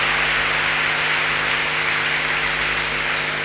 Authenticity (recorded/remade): recorded